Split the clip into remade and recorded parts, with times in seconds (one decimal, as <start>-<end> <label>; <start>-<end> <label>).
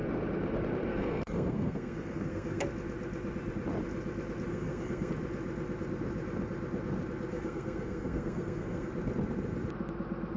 0.0-0.9 recorded; 0.9-2.6 remade; 2.6-4.5 recorded; 4.5-5.1 remade; 5.1-7.3 recorded; 7.3-8.9 remade; 8.9-10.4 recorded